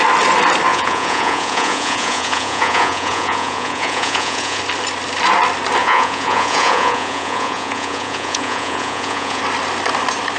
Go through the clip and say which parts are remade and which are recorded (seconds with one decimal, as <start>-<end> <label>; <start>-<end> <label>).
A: 0.0-0.7 recorded; 0.7-4.6 remade; 4.6-5.8 recorded; 5.8-9.4 remade; 9.4-10.4 recorded